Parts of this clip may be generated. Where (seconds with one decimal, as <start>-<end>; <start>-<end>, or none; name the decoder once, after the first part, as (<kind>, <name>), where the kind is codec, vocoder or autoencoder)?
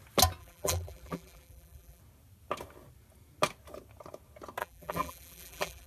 0.4-2.0 (vocoder, BigVGAN v2); 4.6-5.9